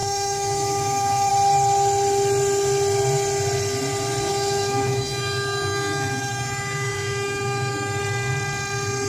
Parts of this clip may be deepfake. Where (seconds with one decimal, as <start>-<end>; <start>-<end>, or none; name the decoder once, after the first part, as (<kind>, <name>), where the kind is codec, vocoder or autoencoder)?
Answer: 0.0-1.3 (autoencoder, DAC-VAE); 4.3-8.0